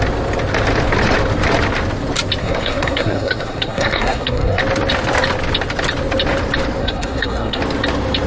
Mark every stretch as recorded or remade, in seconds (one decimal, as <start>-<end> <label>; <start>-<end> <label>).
0.0-2.4 recorded; 2.4-4.6 remade; 4.6-6.8 recorded; 6.8-7.6 remade; 7.6-8.3 recorded